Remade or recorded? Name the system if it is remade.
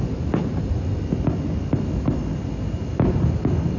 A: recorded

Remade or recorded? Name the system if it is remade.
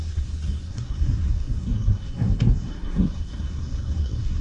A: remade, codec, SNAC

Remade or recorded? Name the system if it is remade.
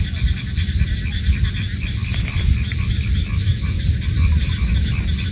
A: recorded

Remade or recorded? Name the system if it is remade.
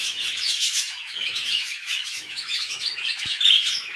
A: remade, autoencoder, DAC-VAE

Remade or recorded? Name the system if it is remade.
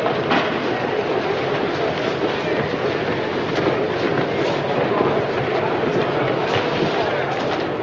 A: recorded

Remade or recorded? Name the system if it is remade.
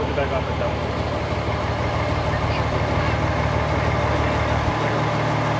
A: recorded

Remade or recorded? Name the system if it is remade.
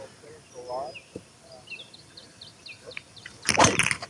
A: recorded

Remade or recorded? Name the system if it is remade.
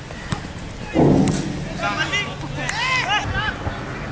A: recorded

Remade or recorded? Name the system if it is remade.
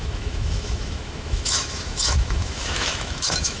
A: remade, autoencoder, DAC-VAE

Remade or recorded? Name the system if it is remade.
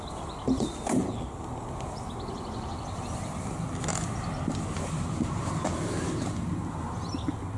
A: recorded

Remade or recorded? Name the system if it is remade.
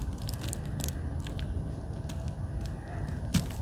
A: recorded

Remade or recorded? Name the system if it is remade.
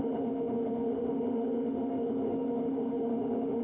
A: remade, autoencoder, DAC-VAE